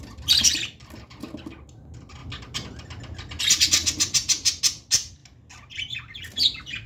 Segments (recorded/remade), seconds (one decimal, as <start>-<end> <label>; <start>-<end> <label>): 0.0-3.8 recorded; 3.8-4.6 remade; 4.6-6.9 recorded